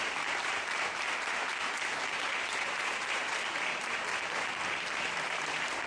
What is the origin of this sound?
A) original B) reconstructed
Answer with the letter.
B